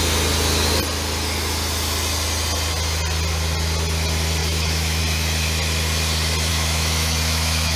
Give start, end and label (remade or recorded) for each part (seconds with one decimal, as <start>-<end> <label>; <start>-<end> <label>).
0.0-4.4 recorded; 4.4-5.0 remade; 5.0-6.5 recorded; 6.5-7.8 remade